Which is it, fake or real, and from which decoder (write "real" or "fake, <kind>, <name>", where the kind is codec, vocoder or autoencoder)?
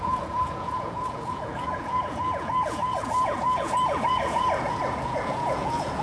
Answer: fake, vocoder, Vocos